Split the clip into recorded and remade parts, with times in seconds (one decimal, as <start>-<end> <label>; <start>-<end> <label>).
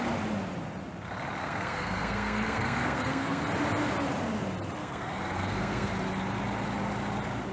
0.0-1.4 recorded; 1.4-3.4 remade; 3.4-4.8 recorded; 4.8-5.9 remade; 5.9-7.5 recorded